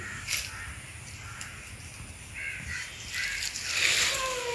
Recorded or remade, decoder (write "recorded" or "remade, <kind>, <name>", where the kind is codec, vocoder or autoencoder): recorded